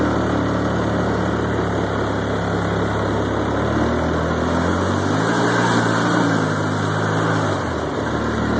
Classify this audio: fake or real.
real